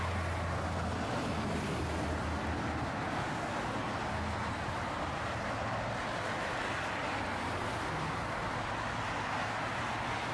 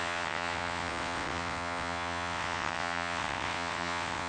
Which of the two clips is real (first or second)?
first